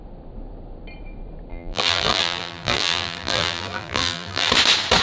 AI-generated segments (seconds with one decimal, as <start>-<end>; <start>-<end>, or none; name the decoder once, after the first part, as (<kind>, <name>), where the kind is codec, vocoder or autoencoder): 1.5-4.5 (vocoder, BigVGAN v2)